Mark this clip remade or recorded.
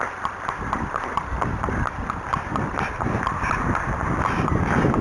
remade